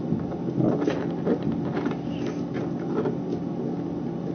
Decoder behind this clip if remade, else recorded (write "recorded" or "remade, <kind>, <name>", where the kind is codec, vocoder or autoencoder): recorded